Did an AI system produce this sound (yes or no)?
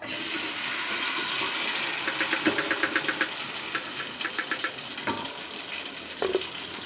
no